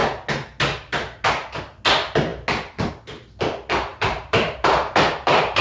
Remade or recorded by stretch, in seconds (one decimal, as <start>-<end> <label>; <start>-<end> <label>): 0.0-3.9 recorded; 3.9-5.6 remade